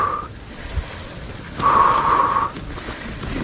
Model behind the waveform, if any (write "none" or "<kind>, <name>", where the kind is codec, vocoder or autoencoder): vocoder, BigVGAN v2